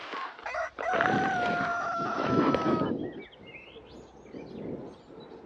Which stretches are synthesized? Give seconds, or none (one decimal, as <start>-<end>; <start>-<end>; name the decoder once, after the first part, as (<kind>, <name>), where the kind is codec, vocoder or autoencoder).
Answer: 1.7-2.8 (autoencoder, DAC-VAE)